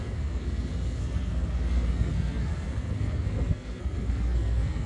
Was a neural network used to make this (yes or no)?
yes